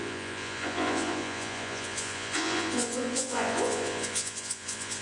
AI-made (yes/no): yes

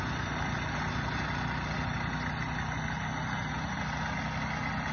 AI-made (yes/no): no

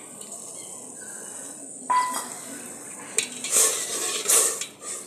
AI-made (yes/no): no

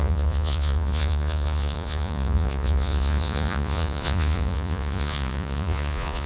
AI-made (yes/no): yes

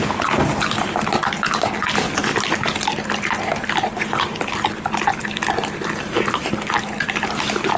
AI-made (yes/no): no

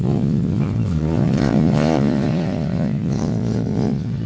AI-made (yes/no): yes